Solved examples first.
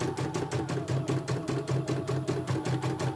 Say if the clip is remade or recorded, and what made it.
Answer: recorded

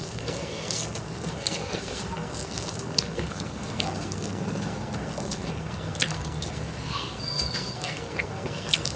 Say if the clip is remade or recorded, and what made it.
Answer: remade, codec, SNAC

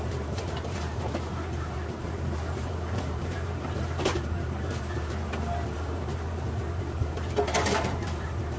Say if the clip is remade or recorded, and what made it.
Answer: remade, vocoder, BigVGAN v2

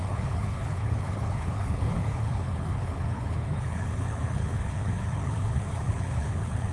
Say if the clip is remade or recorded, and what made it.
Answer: remade, codec, HILCodec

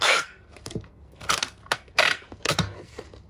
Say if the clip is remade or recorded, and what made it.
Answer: remade, codec, SNAC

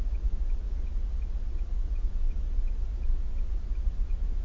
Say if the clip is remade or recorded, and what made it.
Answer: remade, vocoder, Vocos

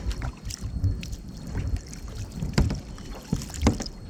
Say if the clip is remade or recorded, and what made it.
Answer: recorded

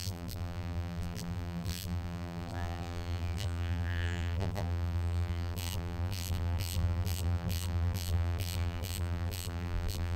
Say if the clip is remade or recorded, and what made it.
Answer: remade, vocoder, BigVGAN v2